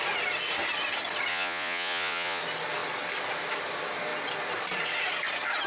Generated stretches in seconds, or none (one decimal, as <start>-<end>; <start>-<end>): 1.3-2.4